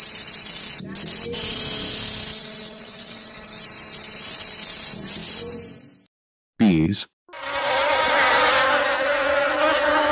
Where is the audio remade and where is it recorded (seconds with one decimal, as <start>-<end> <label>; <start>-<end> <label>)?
0.0-2.4 recorded; 2.4-3.5 remade; 3.5-10.1 recorded